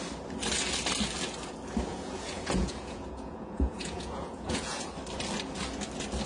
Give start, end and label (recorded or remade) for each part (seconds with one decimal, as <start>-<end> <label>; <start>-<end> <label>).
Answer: 0.0-1.9 recorded; 1.9-4.9 remade; 4.9-6.3 recorded